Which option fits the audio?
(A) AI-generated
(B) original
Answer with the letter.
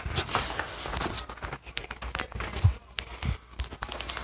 B